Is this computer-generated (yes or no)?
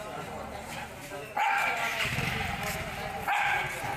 no